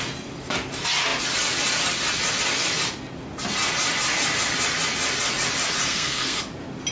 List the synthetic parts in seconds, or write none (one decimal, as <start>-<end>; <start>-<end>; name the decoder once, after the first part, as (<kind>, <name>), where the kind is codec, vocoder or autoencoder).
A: 5.9-6.4 (codec, SNAC)